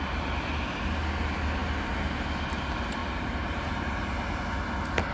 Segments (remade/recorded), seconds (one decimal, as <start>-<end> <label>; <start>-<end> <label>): 0.0-3.0 recorded; 3.0-4.4 remade; 4.4-5.1 recorded